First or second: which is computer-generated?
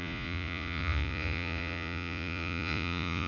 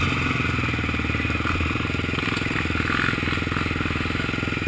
first